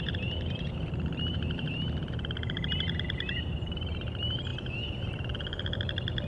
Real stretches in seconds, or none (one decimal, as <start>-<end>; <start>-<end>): none